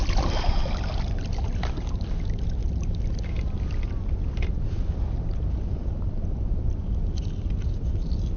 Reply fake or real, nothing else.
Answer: real